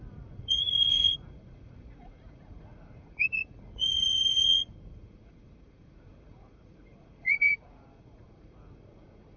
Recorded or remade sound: remade